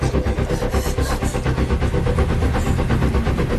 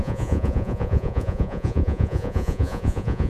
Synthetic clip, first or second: second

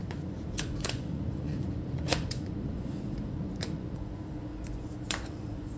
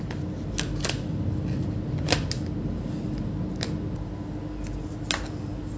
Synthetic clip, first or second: first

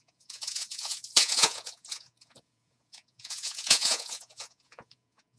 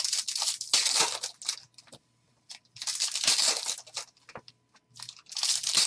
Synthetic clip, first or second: first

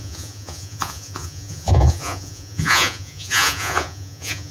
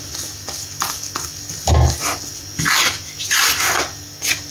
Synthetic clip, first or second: first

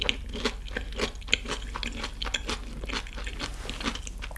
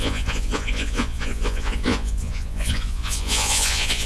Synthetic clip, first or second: second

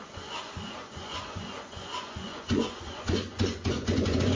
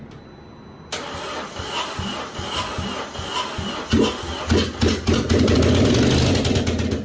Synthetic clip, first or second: first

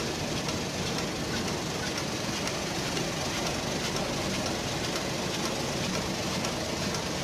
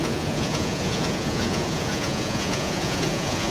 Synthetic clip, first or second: second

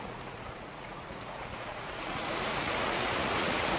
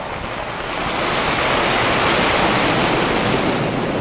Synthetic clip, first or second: first